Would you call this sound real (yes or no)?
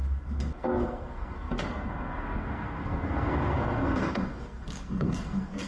no